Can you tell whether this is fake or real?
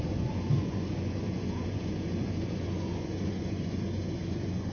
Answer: fake